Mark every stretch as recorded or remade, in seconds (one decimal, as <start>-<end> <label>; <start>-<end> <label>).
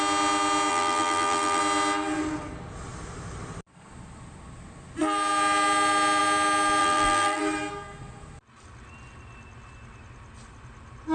0.0-0.7 recorded; 0.7-1.6 remade; 1.6-6.8 recorded; 6.8-7.4 remade; 7.4-11.1 recorded